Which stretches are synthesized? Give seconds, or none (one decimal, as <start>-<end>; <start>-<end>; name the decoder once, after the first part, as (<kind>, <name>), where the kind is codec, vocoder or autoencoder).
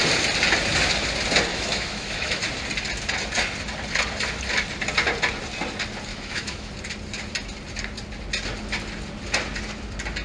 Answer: 1.5-2.4 (autoencoder, DAC-VAE); 6.1-6.7